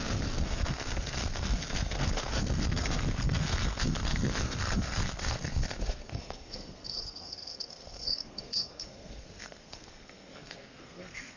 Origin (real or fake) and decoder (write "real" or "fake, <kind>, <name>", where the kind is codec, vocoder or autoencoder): fake, codec, SNAC